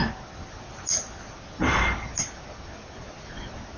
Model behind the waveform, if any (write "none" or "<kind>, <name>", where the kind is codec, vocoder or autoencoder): none